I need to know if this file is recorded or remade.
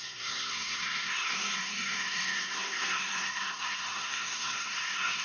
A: remade